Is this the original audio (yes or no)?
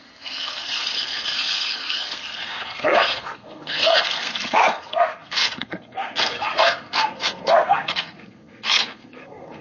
no